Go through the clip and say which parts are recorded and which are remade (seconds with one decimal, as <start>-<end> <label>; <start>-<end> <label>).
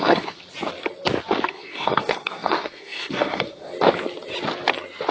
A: 0.0-0.4 remade; 0.4-1.5 recorded; 1.5-3.7 remade; 3.7-5.1 recorded